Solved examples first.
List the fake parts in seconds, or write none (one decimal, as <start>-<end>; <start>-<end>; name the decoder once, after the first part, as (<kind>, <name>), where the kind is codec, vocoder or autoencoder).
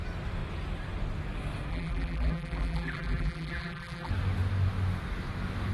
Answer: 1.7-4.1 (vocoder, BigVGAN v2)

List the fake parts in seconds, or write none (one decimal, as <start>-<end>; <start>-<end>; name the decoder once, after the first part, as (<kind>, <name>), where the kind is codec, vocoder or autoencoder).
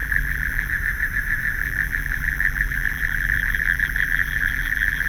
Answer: 0.0-0.7 (vocoder, BigVGAN v2); 1.6-5.1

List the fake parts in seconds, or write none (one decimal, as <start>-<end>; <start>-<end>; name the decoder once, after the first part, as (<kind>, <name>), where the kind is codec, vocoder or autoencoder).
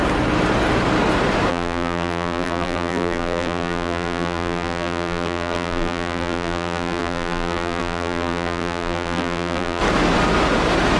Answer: 1.5-9.8 (vocoder, BigVGAN v2)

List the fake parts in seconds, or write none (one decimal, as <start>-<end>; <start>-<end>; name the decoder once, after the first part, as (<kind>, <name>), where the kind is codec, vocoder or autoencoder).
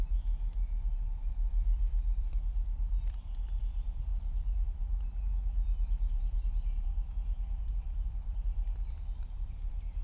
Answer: 0.0-4.1 (vocoder, BigVGAN v2); 7.6-10.0